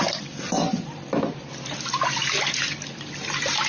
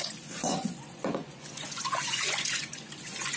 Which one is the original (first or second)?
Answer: first